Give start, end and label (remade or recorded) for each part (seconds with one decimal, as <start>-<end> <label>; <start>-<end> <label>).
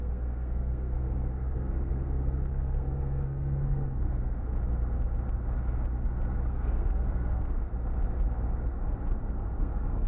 0.0-4.5 remade; 4.5-6.5 recorded; 6.5-7.7 remade; 7.7-9.3 recorded; 9.3-10.1 remade